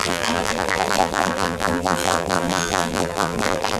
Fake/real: fake